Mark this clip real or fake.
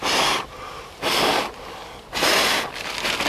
real